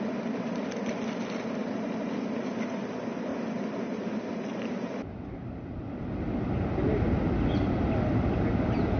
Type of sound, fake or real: real